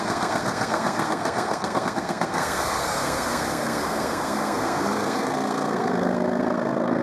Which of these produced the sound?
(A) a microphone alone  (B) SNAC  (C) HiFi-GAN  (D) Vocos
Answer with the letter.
B